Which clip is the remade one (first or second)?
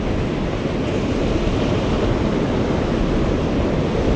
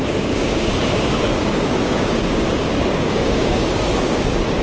second